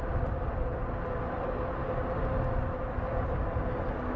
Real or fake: real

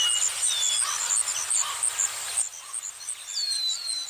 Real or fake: real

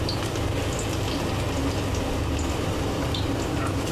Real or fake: real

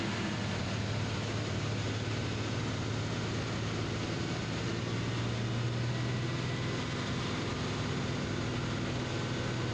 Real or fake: real